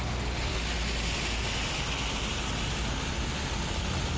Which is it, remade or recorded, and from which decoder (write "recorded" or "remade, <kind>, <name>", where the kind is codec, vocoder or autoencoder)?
recorded